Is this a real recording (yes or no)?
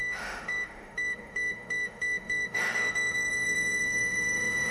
no